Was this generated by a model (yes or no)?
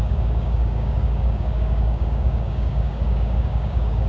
yes